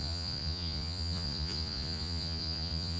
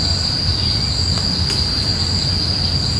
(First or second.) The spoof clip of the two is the first